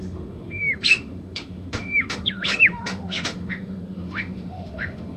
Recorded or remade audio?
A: remade